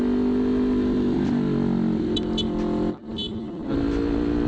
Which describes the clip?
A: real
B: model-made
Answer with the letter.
A